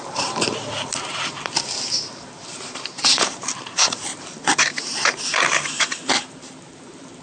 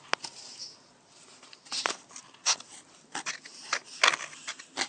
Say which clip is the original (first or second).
second